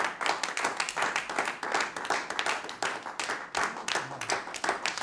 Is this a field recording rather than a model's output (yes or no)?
yes